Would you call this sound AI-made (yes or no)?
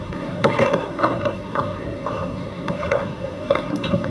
yes